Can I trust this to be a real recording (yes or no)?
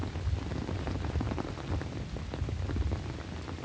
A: yes